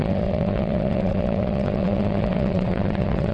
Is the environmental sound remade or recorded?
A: remade